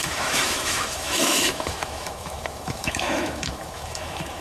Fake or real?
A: fake